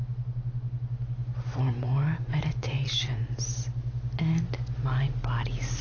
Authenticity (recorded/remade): recorded